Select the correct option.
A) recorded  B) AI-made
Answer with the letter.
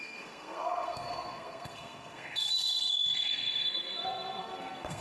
B